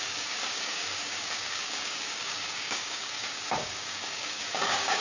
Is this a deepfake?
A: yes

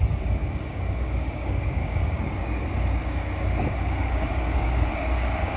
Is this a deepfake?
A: yes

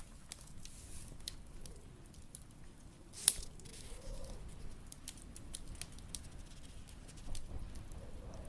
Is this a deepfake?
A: no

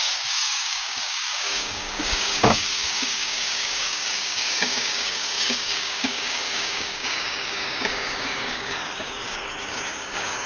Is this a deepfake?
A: yes